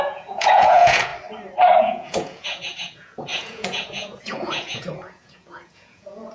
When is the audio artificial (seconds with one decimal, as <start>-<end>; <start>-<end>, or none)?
0.0-1.1; 1.8-6.3